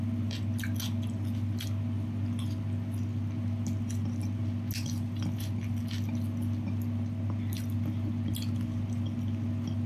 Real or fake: real